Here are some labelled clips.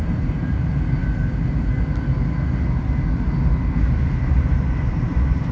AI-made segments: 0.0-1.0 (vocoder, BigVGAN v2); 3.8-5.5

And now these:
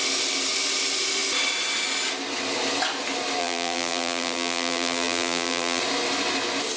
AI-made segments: 3.4-5.8 (vocoder, BigVGAN v2)